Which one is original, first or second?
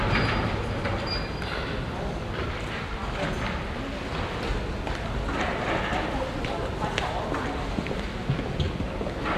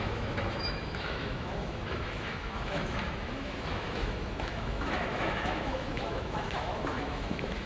first